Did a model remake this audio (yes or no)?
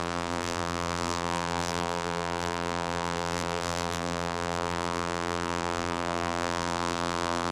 yes